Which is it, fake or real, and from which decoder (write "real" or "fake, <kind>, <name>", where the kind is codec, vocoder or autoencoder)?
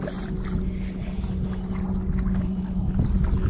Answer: real